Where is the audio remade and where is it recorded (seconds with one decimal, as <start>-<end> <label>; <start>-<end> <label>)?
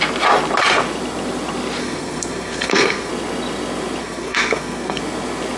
0.0-1.8 recorded; 1.8-3.1 remade; 3.1-4.0 recorded; 4.0-5.0 remade; 5.0-5.6 recorded